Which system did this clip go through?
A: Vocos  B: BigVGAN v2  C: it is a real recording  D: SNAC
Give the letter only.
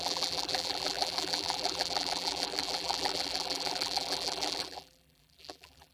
B